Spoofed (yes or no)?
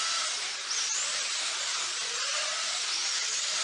no